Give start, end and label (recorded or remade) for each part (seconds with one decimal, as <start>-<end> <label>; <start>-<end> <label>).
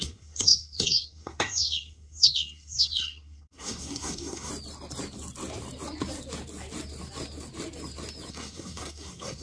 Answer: 0.0-4.5 remade; 4.5-8.3 recorded; 8.3-9.4 remade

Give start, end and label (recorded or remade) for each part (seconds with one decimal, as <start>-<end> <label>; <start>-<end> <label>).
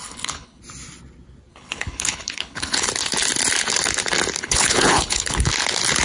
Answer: 0.0-0.6 remade; 0.6-1.5 recorded; 1.5-2.9 remade; 2.9-4.4 recorded; 4.4-5.5 remade; 5.5-6.0 recorded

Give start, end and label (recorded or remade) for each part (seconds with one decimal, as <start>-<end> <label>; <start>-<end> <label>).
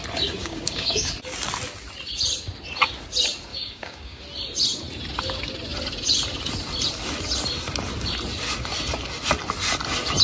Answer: 0.0-0.4 recorded; 0.4-1.1 remade; 1.1-3.5 recorded; 3.5-4.2 remade; 4.2-10.2 recorded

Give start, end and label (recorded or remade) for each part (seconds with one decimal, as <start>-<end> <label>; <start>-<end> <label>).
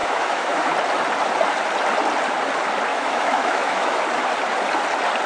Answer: 0.0-0.7 remade; 0.7-2.9 recorded; 2.9-4.0 remade; 4.0-5.3 recorded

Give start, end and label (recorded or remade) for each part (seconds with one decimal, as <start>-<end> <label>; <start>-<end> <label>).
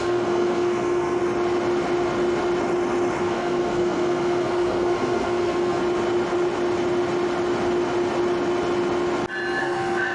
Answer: 0.0-1.2 remade; 1.2-3.2 recorded; 3.2-5.8 remade; 5.8-9.6 recorded; 9.6-10.1 remade